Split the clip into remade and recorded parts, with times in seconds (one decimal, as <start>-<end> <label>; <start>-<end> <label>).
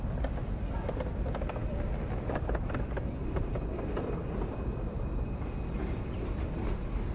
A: 0.0-7.1 recorded